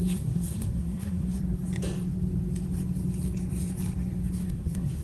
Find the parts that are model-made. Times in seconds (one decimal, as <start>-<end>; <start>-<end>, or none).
0.0-1.4; 4.4-5.0